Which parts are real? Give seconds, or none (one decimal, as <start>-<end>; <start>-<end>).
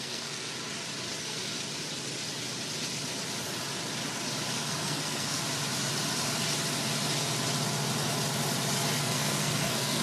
0.5-1.2; 1.6-4.5; 5.4-9.0